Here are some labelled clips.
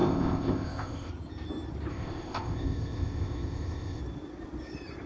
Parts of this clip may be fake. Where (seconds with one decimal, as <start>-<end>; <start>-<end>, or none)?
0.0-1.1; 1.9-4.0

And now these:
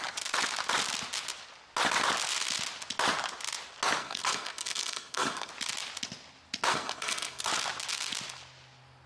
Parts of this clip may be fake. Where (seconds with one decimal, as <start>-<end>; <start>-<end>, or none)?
4.0-5.5; 6.7-7.5

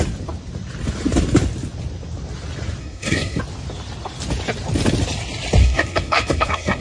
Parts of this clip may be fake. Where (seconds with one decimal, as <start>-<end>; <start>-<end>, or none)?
2.8-3.4; 5.6-6.8

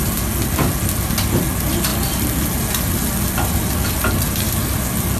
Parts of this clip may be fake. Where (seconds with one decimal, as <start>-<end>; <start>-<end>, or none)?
none

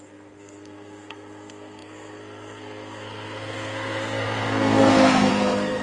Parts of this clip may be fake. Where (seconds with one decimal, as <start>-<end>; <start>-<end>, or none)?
0.0-5.8